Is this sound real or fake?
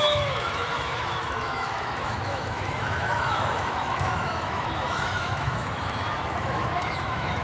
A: fake